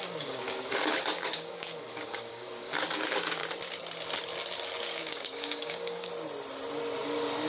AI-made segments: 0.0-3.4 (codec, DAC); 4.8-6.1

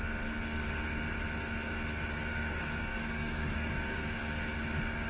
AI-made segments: 2.3-4.2 (codec, DAC)

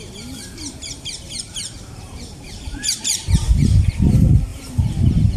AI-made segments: 0.8-4.0 (vocoder, BigVGAN v2); 4.5-5.4

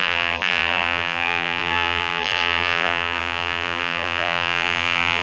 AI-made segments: 0.0-5.2 (vocoder, BigVGAN v2)

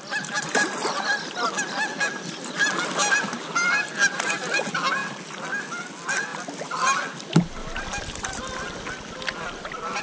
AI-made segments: none

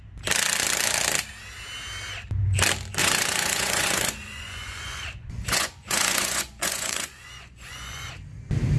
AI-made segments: 3.0-8.1 (vocoder, Vocos)

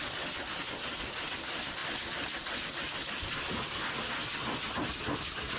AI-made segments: none